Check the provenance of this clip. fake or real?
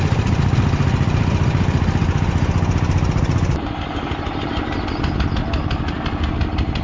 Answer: real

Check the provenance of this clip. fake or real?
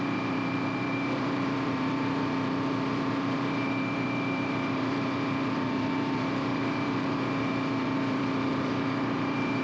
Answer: fake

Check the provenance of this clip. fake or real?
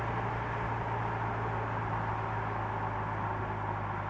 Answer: real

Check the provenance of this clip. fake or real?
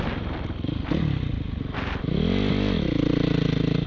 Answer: real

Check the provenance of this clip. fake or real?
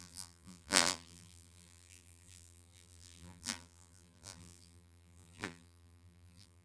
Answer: fake